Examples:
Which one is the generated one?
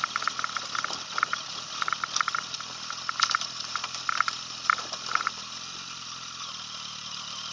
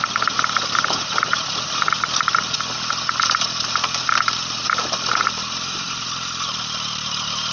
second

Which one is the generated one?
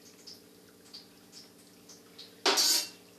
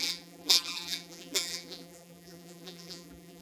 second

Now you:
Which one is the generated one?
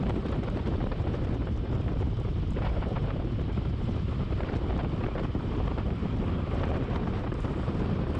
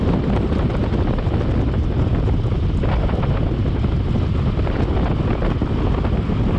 first